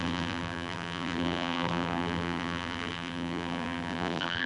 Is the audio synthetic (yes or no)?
yes